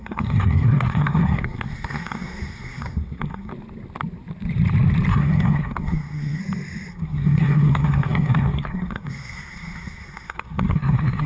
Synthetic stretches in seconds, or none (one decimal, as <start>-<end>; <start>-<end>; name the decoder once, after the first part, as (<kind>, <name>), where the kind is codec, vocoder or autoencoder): 0.0-3.5 (codec, SNAC); 5.1-6.4; 6.9-11.3